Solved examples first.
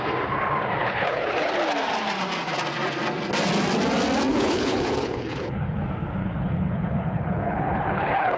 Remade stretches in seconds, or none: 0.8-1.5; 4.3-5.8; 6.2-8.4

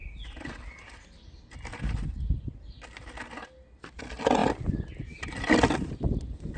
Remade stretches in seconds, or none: none